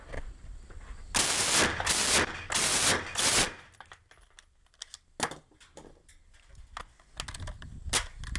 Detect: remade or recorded recorded